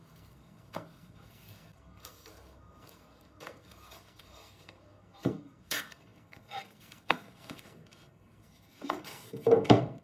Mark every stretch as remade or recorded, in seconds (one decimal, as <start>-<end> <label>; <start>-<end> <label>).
0.0-10.0 remade